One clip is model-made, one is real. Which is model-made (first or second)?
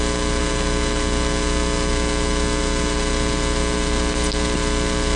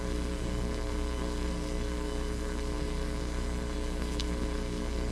second